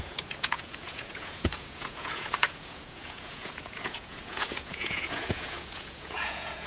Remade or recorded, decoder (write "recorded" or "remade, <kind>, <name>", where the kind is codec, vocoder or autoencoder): remade, vocoder, Vocos